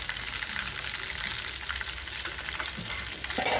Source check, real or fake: real